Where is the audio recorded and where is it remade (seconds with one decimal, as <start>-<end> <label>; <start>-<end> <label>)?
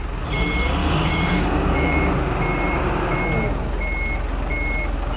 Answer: 0.0-0.8 recorded; 0.8-2.0 remade; 2.0-5.2 recorded